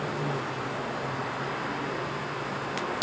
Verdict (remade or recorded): recorded